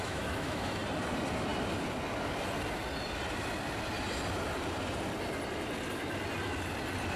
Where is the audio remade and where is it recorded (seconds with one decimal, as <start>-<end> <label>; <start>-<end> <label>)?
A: 0.0-0.8 remade; 0.8-7.2 recorded